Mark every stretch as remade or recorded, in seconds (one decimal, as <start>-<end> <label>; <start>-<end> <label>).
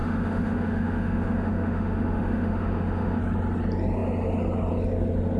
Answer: 0.0-3.2 remade; 3.2-5.4 recorded